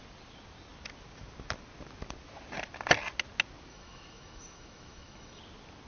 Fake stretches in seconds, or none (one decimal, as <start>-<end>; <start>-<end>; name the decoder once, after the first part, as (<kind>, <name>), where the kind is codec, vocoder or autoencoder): 3.7-5.4 (autoencoder, DAC-VAE)